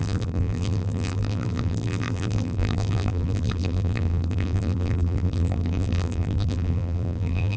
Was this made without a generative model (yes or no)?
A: no